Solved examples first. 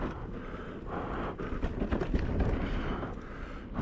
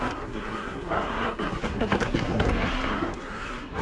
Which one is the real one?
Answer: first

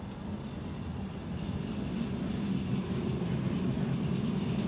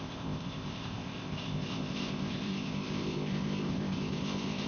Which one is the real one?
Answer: first